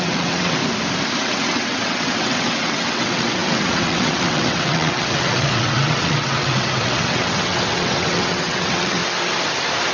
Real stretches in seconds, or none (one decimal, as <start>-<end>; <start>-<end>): 0.6-1.2; 9.0-9.9